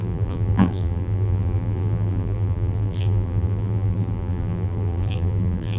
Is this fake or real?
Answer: fake